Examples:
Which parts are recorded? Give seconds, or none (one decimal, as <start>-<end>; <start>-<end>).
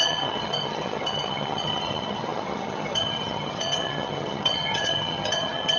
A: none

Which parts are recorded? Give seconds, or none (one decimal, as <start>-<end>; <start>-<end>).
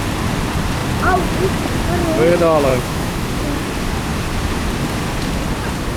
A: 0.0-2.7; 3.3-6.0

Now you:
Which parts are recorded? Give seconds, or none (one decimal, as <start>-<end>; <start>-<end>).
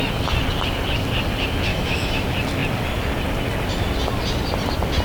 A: 0.0-1.7; 2.2-5.0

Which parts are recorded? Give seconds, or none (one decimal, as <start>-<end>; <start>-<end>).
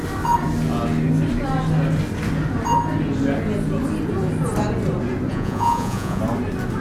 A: 0.0-5.3; 6.2-6.8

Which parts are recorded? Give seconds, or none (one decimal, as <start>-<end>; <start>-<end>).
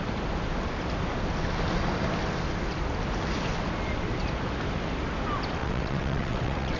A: 0.0-5.6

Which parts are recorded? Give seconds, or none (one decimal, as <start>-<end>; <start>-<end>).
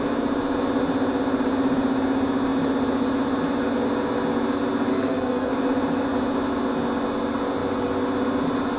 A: 0.0-4.9; 5.5-8.8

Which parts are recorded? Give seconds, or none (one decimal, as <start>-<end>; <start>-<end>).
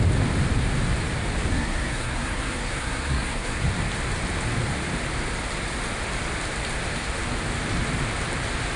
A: 0.0-1.5; 3.6-8.8